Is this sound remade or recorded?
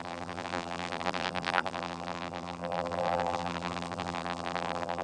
remade